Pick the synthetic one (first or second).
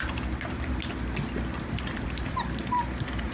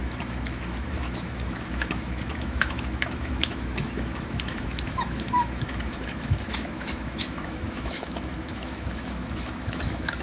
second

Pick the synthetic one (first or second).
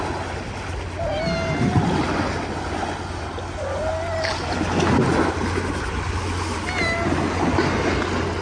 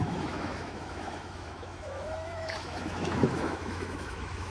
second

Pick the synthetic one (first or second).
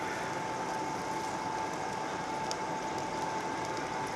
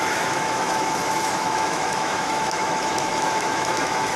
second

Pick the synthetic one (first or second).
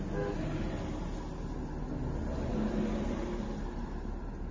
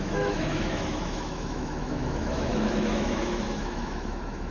second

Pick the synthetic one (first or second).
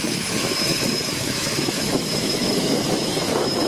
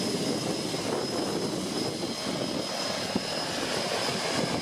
first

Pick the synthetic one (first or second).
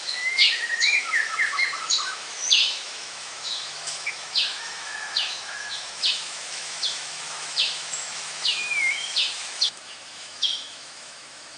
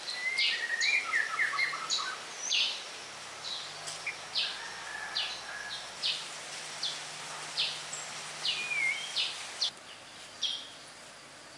first